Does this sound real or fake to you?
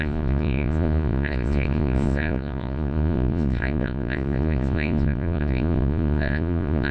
fake